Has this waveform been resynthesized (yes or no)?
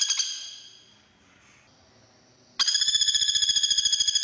no